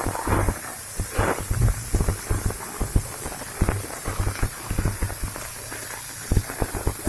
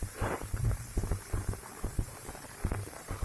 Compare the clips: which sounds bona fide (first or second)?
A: first